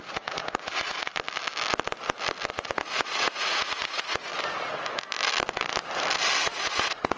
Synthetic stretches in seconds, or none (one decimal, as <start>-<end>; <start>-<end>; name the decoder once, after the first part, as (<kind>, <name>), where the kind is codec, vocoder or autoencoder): 0.0-1.1 (vocoder, Vocos); 2.5-4.3; 6.4-7.2